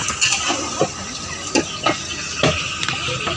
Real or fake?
real